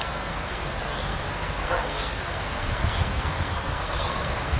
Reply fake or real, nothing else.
fake